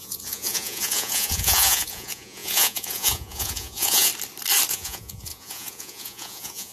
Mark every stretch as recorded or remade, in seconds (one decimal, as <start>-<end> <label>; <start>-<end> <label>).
0.0-4.1 remade; 4.1-4.7 recorded; 4.7-6.7 remade

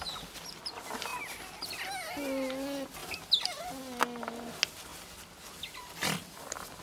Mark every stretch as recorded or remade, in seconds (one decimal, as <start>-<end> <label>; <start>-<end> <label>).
0.0-6.8 recorded